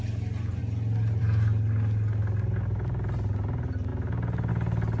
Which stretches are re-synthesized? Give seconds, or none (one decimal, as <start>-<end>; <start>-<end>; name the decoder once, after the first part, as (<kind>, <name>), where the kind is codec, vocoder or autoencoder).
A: none